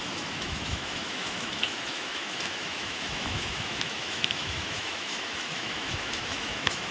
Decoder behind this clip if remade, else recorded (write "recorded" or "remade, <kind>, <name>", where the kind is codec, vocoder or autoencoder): remade, autoencoder, DAC-VAE